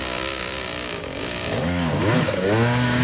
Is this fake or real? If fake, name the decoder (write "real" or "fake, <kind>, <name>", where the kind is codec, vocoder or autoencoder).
fake, codec, DAC